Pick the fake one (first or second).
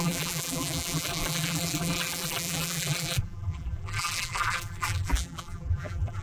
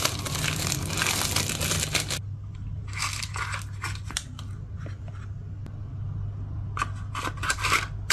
first